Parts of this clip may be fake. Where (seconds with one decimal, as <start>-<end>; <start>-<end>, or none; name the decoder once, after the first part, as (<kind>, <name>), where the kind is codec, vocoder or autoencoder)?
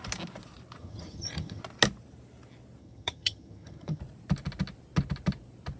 0.8-1.6 (vocoder, HiFi-GAN); 2.8-4.0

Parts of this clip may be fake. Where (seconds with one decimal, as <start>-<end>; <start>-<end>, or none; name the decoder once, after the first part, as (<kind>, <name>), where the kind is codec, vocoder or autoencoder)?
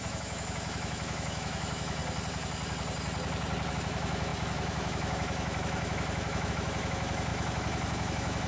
0.0-2.0 (autoencoder, DAC-VAE); 3.7-8.5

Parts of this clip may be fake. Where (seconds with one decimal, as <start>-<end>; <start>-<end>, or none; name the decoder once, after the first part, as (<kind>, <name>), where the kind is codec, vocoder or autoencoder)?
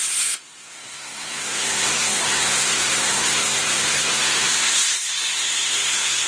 0.0-6.3 (codec, SNAC)